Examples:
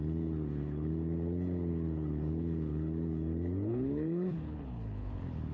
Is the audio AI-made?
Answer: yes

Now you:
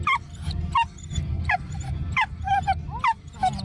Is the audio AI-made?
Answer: no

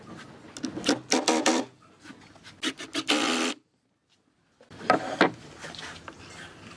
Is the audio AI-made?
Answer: no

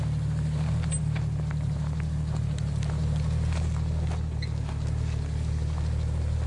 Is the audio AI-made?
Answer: no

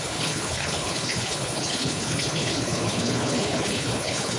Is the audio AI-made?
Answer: yes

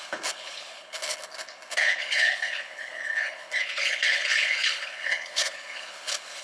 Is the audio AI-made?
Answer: yes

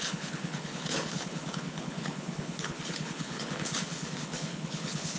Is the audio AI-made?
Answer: yes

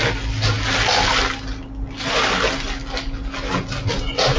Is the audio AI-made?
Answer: no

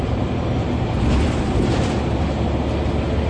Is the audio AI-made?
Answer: no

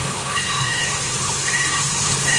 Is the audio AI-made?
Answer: yes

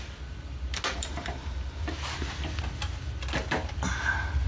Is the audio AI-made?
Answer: no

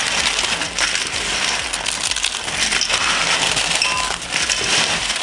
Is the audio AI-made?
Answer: no